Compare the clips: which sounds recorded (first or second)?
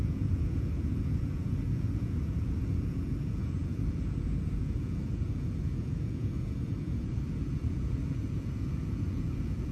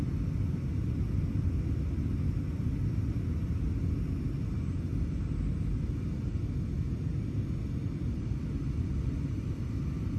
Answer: second